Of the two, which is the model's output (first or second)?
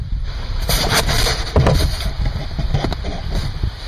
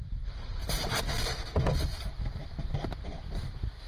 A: first